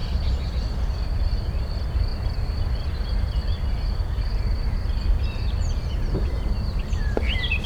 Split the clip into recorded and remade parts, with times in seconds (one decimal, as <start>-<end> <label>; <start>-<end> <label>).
0.0-2.1 remade; 2.1-2.7 recorded; 2.7-7.7 remade